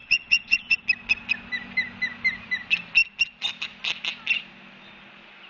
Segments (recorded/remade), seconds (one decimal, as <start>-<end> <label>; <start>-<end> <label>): 0.0-0.8 remade; 0.8-5.5 recorded